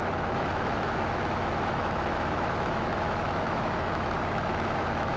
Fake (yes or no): yes